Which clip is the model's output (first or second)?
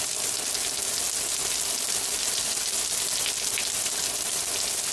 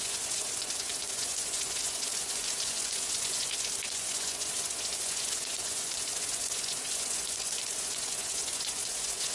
second